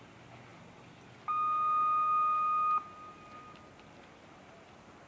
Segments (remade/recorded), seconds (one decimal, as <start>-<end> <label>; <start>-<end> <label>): 0.0-5.1 recorded